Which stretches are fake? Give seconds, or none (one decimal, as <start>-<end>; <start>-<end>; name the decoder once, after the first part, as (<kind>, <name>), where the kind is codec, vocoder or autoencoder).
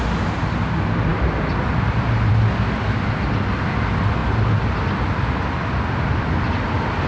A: none